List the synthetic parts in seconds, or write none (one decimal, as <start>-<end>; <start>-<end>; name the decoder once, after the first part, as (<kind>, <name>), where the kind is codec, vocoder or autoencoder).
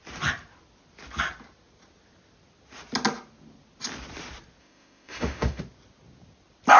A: 4.6-5.6 (autoencoder, DAC-VAE)